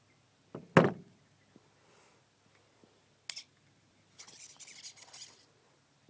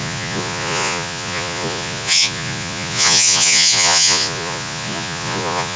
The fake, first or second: second